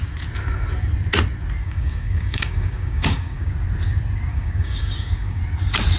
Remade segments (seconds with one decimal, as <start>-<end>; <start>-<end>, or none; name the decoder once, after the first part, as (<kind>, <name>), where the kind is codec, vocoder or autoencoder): 1.6-3.5 (codec, DAC); 4.3-5.4